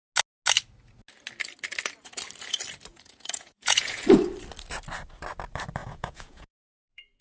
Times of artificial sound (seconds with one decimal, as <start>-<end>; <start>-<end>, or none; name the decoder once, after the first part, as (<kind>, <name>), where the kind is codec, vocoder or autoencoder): 2.9-4.0 (vocoder, Vocos); 5.8-7.2